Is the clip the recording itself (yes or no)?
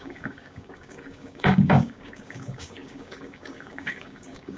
no